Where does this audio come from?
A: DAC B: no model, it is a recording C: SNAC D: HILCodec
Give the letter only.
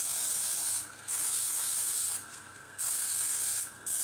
C